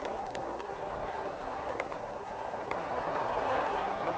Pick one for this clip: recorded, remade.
remade